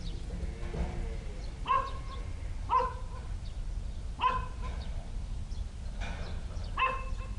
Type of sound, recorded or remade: recorded